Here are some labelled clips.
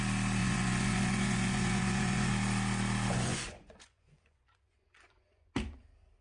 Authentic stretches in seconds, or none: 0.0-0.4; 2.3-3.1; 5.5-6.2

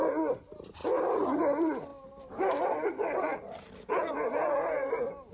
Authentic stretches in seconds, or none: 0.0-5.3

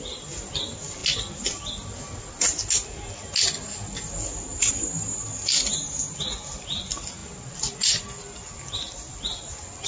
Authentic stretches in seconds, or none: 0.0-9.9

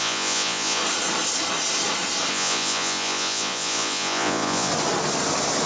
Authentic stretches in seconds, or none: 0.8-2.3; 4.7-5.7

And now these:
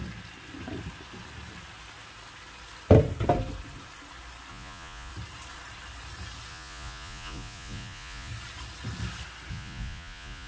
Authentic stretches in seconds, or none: 0.0-4.5; 5.1-6.5; 8.3-9.5

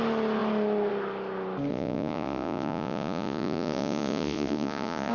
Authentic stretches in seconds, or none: 0.0-1.7

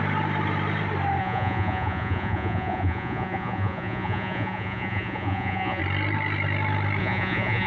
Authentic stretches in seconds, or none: 0.0-1.2; 5.8-7.0

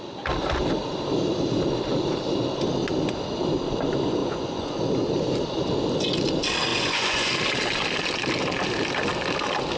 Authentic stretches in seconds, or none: 0.0-4.2; 4.8-6.7; 7.3-9.8